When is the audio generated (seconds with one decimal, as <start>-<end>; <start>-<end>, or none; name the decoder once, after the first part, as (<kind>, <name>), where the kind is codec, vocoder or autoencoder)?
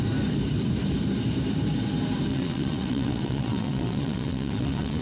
2.3-5.0 (vocoder, WaveNeXt)